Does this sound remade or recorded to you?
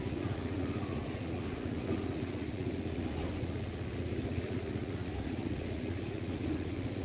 remade